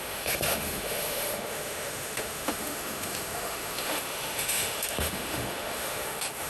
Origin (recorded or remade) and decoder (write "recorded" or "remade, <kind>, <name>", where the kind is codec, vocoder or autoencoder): remade, autoencoder, DAC-VAE